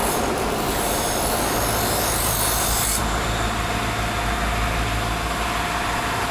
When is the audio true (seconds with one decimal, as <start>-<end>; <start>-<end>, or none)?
0.8-3.0; 3.7-6.3